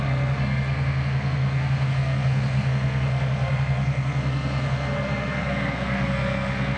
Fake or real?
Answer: fake